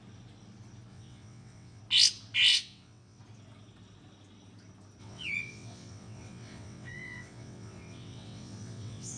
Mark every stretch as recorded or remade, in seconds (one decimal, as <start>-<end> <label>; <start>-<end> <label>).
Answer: 0.0-0.9 recorded; 0.9-1.8 remade; 1.8-2.5 recorded; 2.5-3.2 remade; 3.2-5.0 recorded; 5.0-9.2 remade